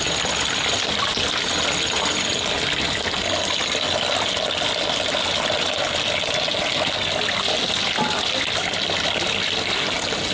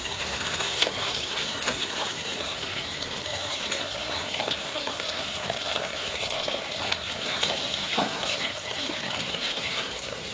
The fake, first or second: second